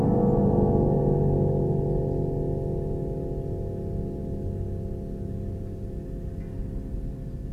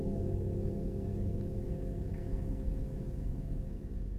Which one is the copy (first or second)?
second